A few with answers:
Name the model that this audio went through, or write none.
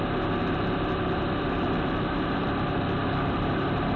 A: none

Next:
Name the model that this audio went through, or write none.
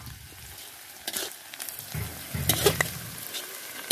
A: none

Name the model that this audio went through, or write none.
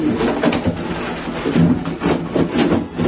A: none